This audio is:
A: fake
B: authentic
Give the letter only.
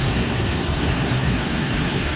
A